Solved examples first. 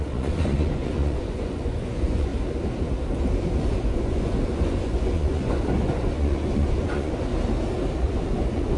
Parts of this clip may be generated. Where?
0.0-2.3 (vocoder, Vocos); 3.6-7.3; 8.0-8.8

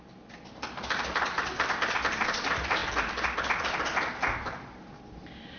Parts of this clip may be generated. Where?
none

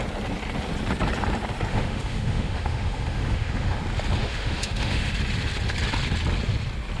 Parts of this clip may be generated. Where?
1.7-3.8 (autoencoder, DAC-VAE); 4.2-5.1

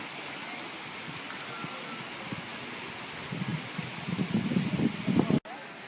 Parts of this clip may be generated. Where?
none

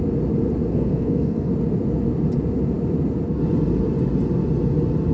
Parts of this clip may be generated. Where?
0.7-1.5 (codec, SNAC)

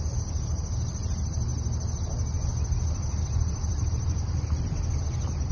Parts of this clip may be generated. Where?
none

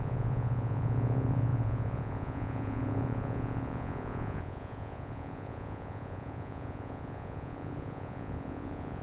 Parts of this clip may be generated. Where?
0.0-9.0 (vocoder, Vocos)